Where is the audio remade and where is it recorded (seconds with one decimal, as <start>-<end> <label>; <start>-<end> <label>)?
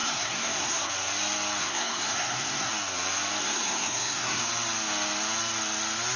0.0-0.9 remade; 0.9-1.6 recorded; 1.6-2.7 remade; 2.7-3.4 recorded; 3.4-4.4 remade; 4.4-6.2 recorded